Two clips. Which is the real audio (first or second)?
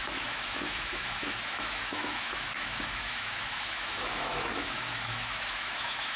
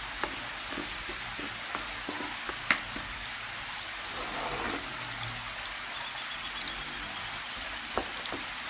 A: second